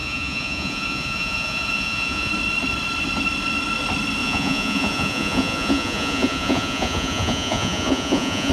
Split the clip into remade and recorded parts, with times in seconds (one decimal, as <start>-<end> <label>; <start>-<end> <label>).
0.0-2.3 remade; 2.3-4.2 recorded; 4.2-8.5 remade